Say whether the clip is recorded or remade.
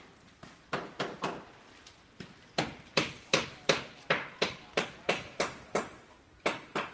recorded